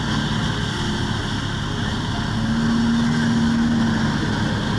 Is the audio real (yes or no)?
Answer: yes